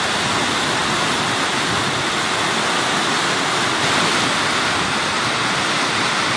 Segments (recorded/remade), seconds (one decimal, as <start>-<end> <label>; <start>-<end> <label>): 0.0-6.4 recorded